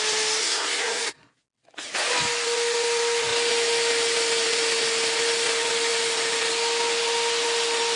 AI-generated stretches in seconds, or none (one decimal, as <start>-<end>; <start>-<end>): 0.4-1.3